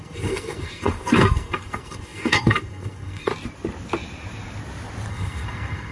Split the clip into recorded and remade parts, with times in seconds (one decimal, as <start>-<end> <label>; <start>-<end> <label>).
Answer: 0.0-3.3 remade; 3.3-5.1 recorded; 5.1-5.9 remade